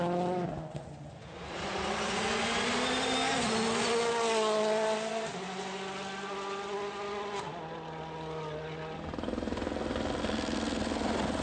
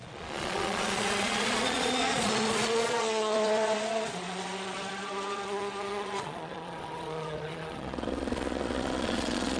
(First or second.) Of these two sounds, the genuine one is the first